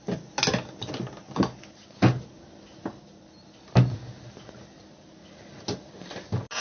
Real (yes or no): yes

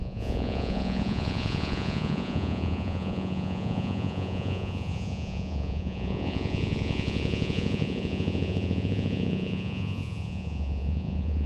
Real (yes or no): no